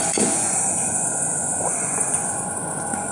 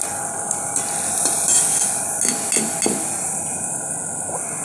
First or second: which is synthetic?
first